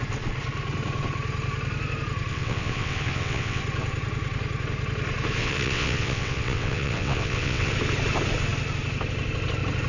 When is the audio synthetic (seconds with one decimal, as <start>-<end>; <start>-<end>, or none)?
2.3-3.6; 5.4-7.7